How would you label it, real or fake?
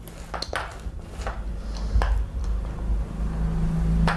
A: real